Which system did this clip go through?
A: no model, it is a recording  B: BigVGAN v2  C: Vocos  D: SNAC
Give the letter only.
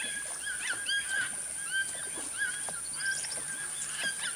A